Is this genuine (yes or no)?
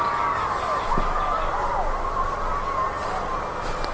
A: yes